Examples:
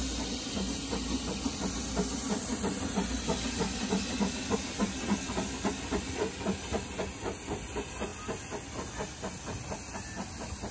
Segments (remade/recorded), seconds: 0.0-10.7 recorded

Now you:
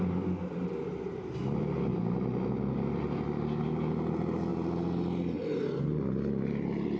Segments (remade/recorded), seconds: 0.0-7.0 recorded

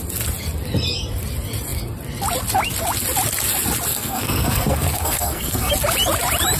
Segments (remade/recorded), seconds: 0.0-3.9 recorded; 3.9-5.7 remade; 5.7-6.6 recorded

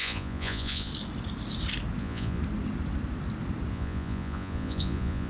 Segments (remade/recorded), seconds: 0.0-0.9 remade; 0.9-2.0 recorded; 2.0-2.4 remade; 2.4-3.7 recorded; 3.7-5.3 remade

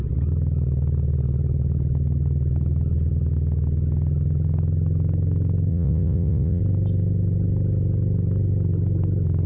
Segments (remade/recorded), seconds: 0.0-5.7 recorded; 5.7-6.6 remade; 6.6-9.5 recorded

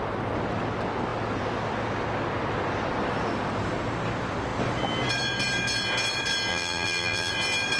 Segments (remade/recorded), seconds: 0.0-6.5 recorded; 6.5-7.3 remade; 7.3-7.8 recorded

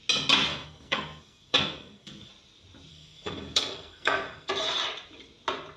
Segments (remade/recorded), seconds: 0.0-0.5 recorded; 0.5-2.3 remade; 2.3-2.9 recorded; 2.9-4.5 remade; 4.5-5.8 recorded

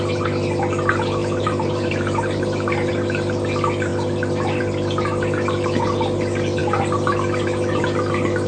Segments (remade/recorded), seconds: 0.0-1.2 recorded; 1.2-2.9 remade; 2.9-8.5 recorded